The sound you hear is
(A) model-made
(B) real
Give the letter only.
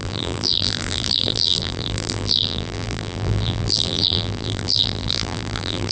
A